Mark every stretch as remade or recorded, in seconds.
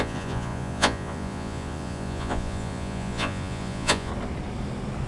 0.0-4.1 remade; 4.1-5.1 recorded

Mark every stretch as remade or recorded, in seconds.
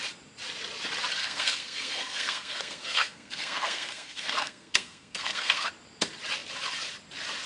0.0-1.2 recorded; 1.2-5.7 remade; 5.7-7.5 recorded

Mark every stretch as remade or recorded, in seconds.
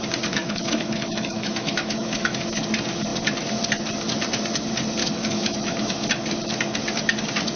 0.0-0.4 recorded; 0.4-2.6 remade; 2.6-5.0 recorded; 5.0-6.1 remade; 6.1-7.6 recorded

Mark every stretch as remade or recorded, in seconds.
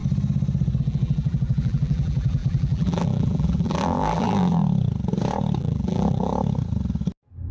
0.0-0.8 recorded; 0.8-4.6 remade; 4.6-5.6 recorded; 5.6-6.3 remade; 6.3-7.5 recorded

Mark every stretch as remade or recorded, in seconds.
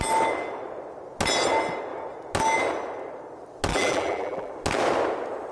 0.0-3.7 recorded; 3.7-4.5 remade; 4.5-5.5 recorded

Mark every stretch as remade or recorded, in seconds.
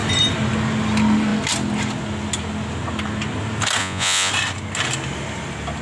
0.0-3.8 recorded; 3.8-4.3 remade; 4.3-5.8 recorded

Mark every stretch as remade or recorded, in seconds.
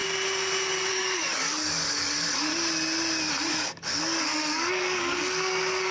0.0-0.9 recorded; 0.9-2.5 remade; 2.5-3.5 recorded; 3.5-5.9 remade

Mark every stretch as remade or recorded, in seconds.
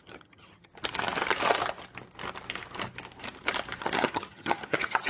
0.0-0.7 remade; 0.7-3.8 recorded; 3.8-5.1 remade